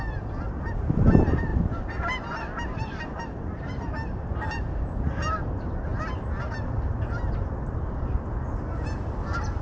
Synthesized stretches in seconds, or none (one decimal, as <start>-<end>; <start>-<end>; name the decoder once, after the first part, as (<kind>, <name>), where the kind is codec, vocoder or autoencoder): 1.5-3.4 (vocoder, BigVGAN v2)